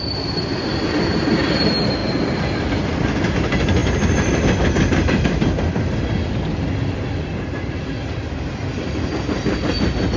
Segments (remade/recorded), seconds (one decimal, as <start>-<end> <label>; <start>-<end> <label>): 0.0-10.2 recorded